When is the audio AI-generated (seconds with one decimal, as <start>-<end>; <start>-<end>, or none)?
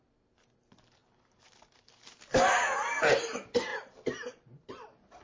1.0-2.6